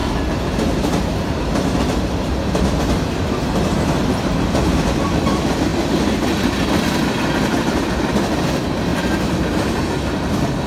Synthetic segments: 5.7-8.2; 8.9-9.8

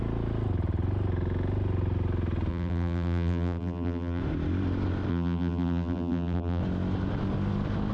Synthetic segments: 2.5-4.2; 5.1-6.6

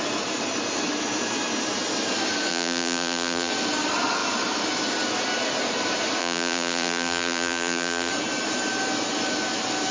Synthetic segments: 2.5-3.5; 6.2-8.1